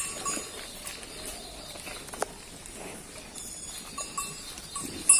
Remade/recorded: recorded